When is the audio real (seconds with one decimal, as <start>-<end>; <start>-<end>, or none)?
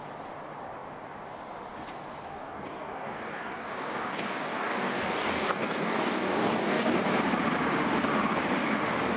0.0-2.3; 7.0-9.2